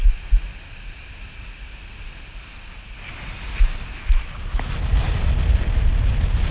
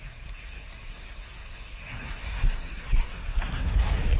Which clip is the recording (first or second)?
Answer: first